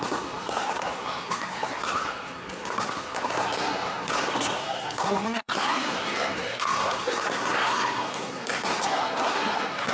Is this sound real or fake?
fake